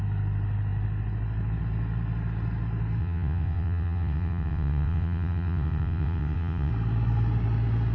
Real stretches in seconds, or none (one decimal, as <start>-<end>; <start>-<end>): 0.0-3.0; 6.7-7.9